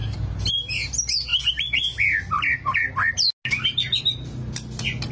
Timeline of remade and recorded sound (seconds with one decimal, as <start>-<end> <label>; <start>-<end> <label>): 0.0-0.5 remade; 0.5-5.1 recorded